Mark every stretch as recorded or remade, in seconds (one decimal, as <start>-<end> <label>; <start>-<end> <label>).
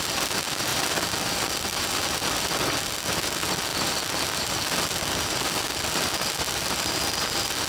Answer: 0.0-7.7 recorded